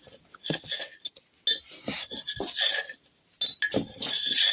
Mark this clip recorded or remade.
recorded